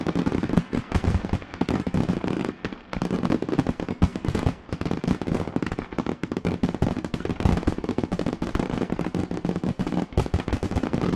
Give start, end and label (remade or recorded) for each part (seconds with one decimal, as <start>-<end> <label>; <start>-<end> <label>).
0.0-11.2 remade